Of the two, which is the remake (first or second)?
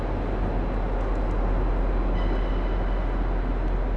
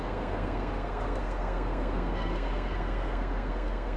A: second